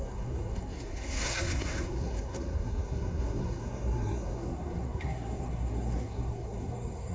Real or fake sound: fake